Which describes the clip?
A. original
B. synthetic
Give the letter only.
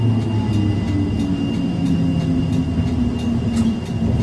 A